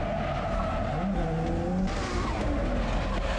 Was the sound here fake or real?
real